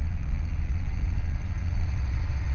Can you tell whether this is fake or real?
fake